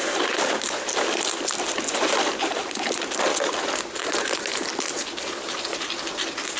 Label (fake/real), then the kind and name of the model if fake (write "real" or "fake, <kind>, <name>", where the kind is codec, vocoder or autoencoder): real